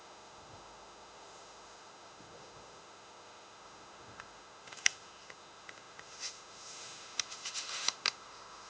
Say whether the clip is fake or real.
fake